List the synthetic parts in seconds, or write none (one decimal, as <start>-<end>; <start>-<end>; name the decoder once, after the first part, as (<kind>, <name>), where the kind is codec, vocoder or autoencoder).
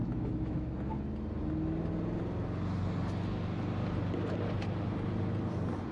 0.0-0.7 (autoencoder, DAC-VAE)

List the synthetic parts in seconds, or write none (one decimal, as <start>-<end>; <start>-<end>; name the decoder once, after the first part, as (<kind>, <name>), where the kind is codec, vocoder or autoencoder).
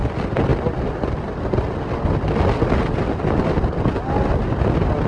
none